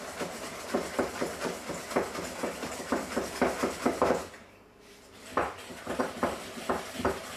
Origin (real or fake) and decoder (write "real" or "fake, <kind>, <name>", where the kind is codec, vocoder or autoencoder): real